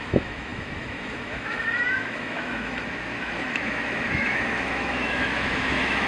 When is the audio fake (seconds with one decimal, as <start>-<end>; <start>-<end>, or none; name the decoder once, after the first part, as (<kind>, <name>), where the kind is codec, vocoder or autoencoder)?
0.0-6.1 (autoencoder, DAC-VAE)

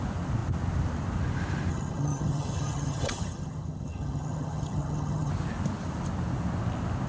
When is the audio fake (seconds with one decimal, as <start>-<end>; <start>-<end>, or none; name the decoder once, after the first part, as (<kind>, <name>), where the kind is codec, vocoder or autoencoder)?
1.7-5.3 (vocoder, HiFi-GAN)